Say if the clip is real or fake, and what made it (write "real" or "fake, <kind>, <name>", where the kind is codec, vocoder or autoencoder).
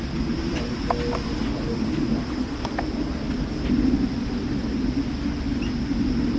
real